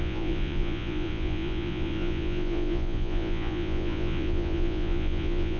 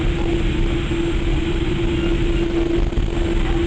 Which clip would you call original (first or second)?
second